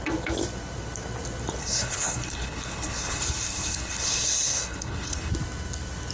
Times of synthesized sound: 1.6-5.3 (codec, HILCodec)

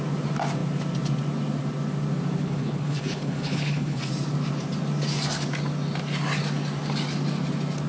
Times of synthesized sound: 2.4-4.0 (codec, HILCodec)

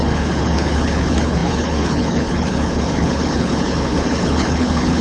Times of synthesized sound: 0.0-5.0 (codec, HILCodec)

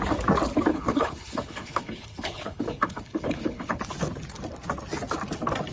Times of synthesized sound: 0.7-3.8 (codec, HILCodec)

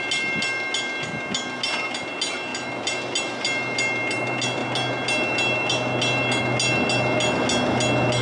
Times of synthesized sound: none

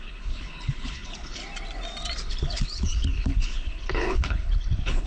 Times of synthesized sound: 0.0-1.4 (codec, HILCodec); 2.3-5.1

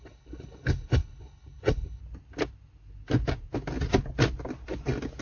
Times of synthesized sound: 0.0-2.0 (codec, HILCodec)

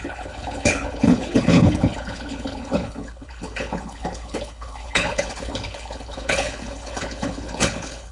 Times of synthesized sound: 0.0-8.1 (codec, HILCodec)